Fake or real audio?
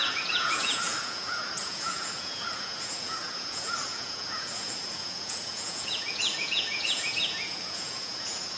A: fake